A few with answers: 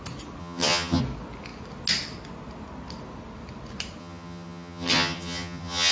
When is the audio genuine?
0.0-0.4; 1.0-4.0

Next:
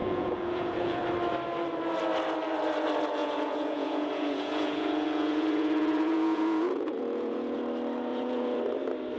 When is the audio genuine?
1.0-3.2; 7.6-8.1; 8.6-9.2

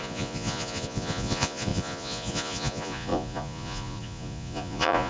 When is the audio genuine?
none

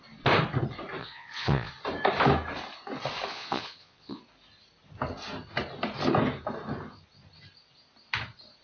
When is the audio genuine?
0.0-1.0; 1.7-3.3; 4.2-8.6